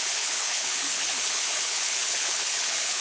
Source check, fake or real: fake